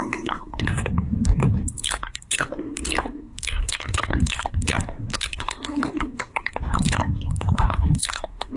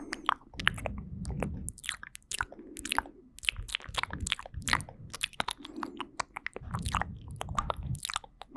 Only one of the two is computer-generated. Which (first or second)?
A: first